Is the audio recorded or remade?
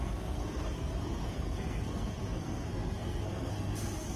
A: remade